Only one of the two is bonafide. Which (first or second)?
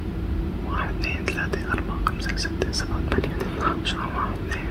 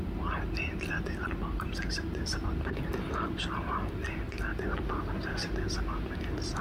second